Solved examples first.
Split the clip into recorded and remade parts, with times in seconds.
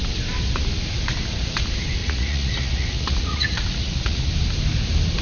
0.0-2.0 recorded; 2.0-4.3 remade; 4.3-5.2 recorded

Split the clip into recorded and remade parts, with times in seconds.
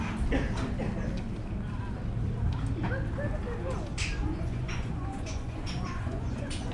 0.0-3.9 recorded; 3.9-6.7 remade